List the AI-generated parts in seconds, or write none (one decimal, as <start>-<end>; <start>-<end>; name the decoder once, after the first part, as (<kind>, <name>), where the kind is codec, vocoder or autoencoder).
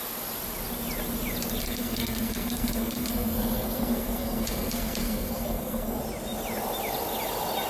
1.6-6.0 (codec, SNAC)